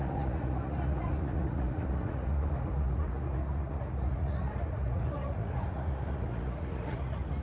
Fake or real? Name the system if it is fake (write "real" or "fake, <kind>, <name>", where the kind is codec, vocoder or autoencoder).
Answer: fake, vocoder, Vocos